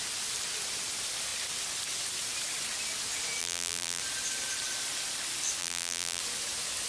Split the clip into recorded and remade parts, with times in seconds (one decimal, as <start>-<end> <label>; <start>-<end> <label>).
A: 0.0-3.4 recorded; 3.4-4.0 remade; 4.0-5.6 recorded; 5.6-6.2 remade; 6.2-6.9 recorded